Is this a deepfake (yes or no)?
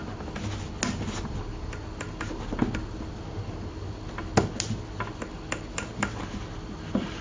no